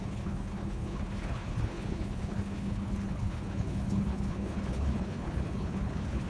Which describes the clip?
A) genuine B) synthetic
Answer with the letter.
B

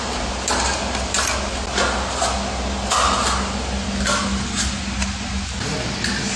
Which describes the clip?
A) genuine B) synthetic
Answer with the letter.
A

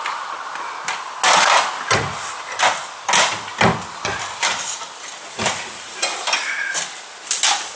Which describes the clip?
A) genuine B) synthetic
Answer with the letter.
A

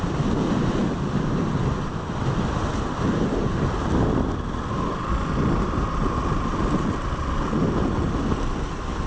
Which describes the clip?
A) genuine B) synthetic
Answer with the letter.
A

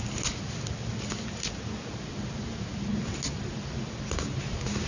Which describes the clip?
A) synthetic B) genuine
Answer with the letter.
B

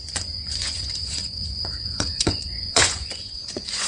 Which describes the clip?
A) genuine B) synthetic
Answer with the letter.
B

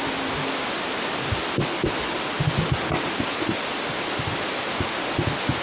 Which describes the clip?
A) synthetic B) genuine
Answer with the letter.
B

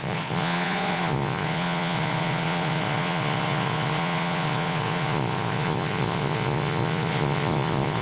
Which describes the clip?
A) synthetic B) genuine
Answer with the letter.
A